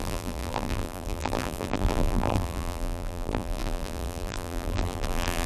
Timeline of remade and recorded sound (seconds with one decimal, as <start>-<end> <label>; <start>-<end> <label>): 0.0-5.5 remade